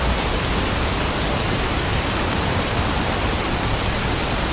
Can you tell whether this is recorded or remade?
recorded